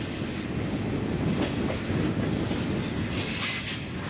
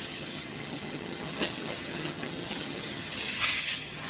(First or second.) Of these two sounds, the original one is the first